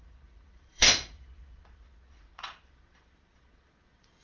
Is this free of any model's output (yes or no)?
no